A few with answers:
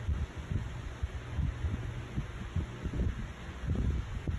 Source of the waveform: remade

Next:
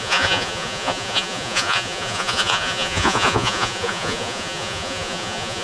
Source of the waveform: remade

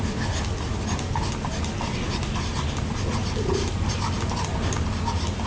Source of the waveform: recorded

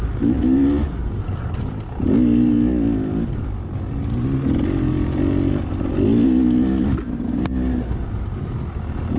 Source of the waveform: recorded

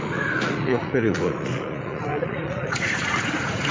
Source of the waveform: remade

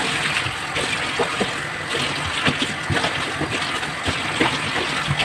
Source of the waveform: recorded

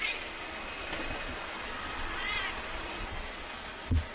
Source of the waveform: remade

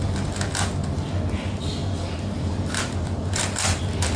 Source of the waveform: recorded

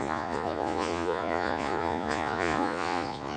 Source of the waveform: remade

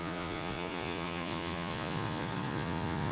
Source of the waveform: remade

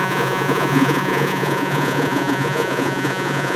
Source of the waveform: remade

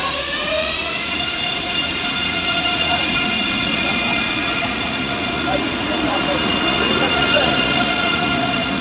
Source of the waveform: remade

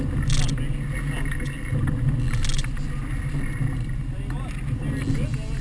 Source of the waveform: recorded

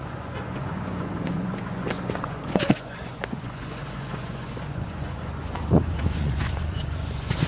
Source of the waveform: remade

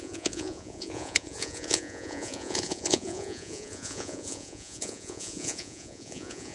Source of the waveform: remade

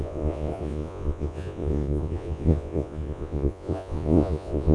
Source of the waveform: remade